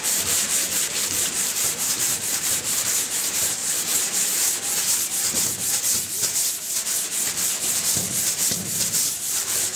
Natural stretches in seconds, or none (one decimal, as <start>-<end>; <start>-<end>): 3.6-7.6